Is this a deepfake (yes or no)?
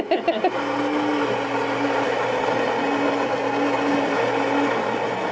no